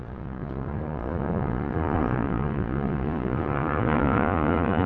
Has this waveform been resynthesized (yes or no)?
yes